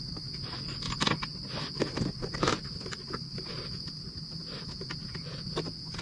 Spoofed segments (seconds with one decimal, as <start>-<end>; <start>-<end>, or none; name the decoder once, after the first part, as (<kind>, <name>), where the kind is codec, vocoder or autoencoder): none